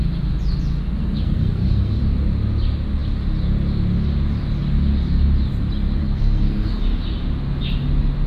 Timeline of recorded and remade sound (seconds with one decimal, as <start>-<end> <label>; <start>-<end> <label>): 0.0-1.0 recorded; 1.0-2.0 remade; 2.0-6.0 recorded; 6.0-6.8 remade; 6.8-8.3 recorded